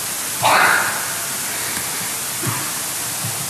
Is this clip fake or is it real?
real